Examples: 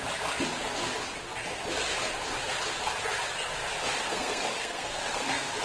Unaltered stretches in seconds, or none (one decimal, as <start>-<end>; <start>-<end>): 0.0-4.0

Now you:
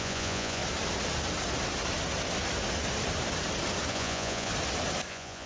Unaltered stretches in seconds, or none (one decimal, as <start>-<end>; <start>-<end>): 0.6-3.9; 4.5-5.1

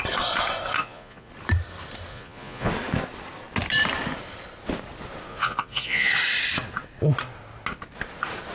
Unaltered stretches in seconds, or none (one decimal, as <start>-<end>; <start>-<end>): 0.0-0.8; 1.3-2.1; 2.7-5.3; 6.1-8.5

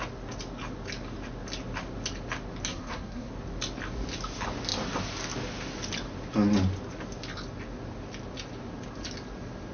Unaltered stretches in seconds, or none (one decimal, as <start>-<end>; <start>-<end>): 0.0-2.7; 3.3-9.7

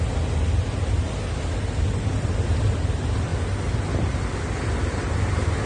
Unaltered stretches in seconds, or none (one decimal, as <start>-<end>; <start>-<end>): 0.0-5.7

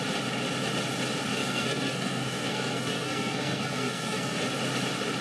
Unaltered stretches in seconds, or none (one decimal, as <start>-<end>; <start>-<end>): 0.0-1.3; 4.4-5.2

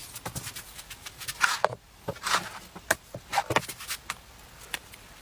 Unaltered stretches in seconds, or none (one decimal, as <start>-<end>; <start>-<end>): 0.0-5.2